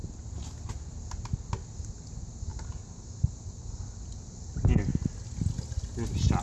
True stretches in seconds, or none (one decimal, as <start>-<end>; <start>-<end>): 0.0-6.4